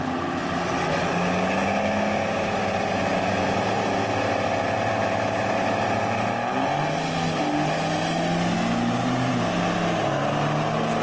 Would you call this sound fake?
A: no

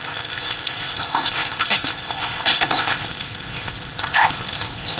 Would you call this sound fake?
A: yes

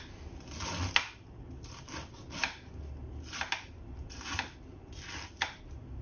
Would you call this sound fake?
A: no